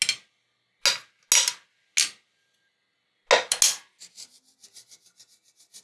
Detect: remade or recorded recorded